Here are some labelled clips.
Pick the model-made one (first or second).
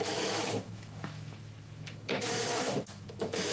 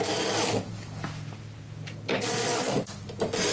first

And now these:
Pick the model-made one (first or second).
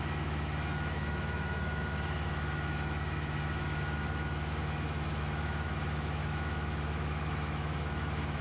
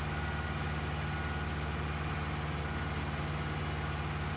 first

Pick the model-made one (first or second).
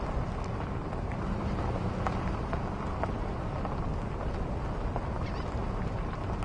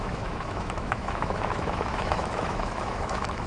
second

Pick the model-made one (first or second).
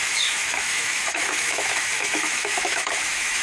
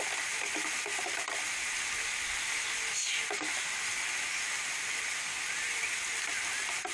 first